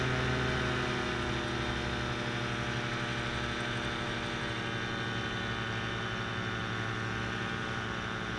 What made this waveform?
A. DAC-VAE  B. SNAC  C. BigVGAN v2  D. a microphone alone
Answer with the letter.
D